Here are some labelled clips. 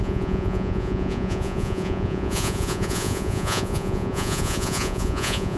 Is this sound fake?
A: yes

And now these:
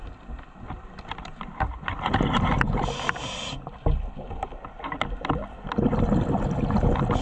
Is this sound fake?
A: no